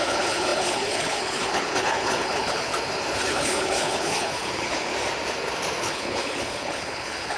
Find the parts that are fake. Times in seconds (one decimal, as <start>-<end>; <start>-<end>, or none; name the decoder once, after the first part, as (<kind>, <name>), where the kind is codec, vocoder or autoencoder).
0.0-2.7 (codec, HILCodec); 3.3-4.9; 5.8-7.4